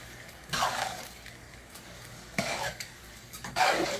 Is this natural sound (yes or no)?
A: no